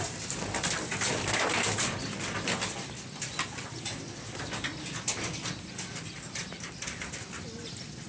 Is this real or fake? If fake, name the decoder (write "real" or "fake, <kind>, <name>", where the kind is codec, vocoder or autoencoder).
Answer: real